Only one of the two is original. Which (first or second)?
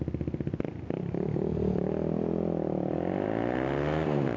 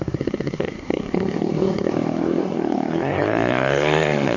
first